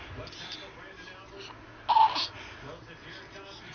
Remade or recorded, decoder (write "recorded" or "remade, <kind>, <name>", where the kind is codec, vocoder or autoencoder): recorded